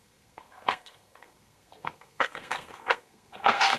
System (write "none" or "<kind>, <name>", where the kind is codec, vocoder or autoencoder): codec, SNAC